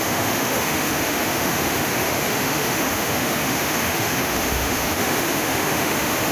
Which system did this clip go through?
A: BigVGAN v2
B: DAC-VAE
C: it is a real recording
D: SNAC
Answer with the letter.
B